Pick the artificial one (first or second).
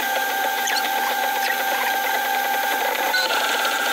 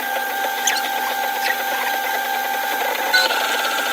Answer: first